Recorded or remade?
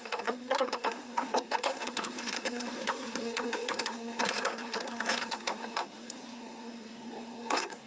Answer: remade